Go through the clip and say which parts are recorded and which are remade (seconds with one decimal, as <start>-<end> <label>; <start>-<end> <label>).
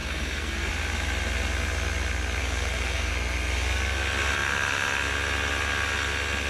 0.0-0.7 remade; 0.7-2.4 recorded; 2.4-3.1 remade; 3.1-6.5 recorded